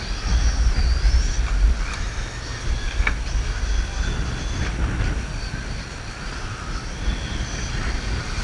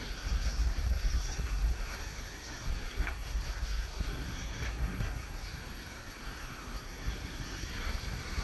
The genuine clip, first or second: first